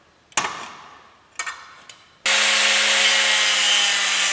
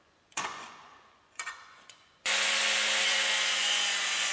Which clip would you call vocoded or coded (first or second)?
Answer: second